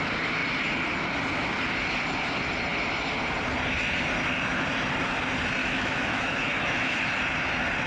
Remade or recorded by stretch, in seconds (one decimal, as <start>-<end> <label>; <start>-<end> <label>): 0.0-5.6 recorded; 5.6-7.0 remade; 7.0-7.9 recorded